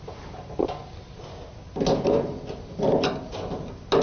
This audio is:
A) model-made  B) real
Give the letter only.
B